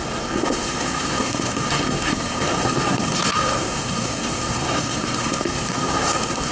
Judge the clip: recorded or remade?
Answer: remade